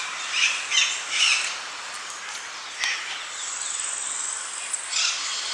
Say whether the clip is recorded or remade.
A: recorded